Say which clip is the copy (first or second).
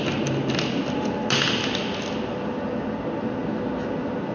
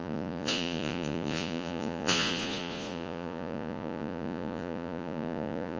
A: second